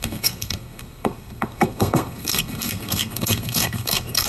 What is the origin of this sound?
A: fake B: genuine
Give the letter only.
A